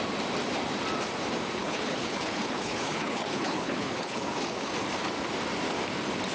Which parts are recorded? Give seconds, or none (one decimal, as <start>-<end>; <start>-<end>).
0.0-1.6; 4.7-6.3